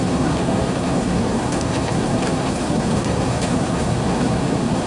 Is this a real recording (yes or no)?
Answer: no